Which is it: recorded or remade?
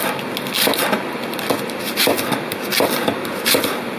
recorded